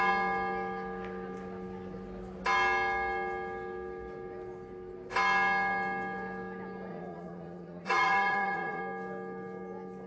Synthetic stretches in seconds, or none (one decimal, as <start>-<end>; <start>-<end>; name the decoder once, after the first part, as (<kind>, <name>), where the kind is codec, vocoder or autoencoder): 6.9-8.8 (vocoder, Vocos)